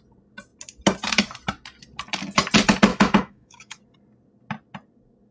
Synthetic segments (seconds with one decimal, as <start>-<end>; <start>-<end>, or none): 2.9-3.8

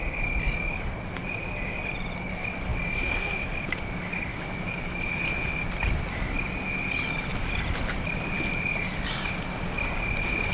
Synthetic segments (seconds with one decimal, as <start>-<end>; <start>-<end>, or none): 4.3-5.2

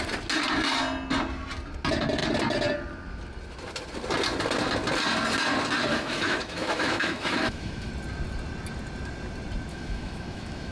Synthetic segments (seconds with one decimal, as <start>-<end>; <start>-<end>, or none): 5.9-7.9; 9.7-10.7

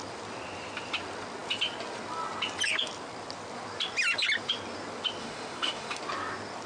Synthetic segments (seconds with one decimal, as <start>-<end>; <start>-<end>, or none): 5.2-6.0